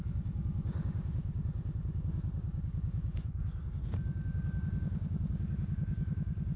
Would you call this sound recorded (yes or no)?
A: no